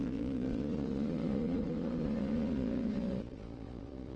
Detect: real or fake fake